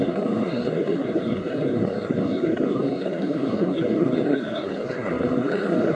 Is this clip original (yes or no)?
no